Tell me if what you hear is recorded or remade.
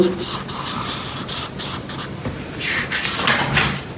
recorded